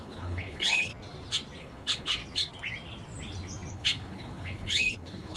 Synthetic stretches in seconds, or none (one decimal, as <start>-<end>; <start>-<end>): 0.0-0.9; 1.6-2.2; 3.7-5.4